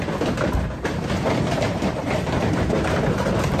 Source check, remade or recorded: recorded